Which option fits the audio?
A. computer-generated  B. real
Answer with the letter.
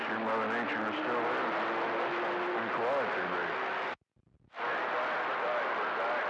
B